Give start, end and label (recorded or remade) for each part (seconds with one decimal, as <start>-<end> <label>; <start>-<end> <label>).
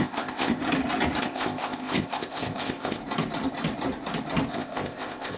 0.0-0.6 remade; 0.6-1.2 recorded; 1.2-3.0 remade; 3.0-4.5 recorded; 4.5-5.4 remade